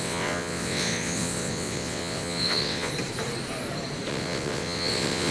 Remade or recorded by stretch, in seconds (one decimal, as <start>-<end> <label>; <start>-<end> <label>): 0.0-2.9 remade; 2.9-4.1 recorded; 4.1-5.3 remade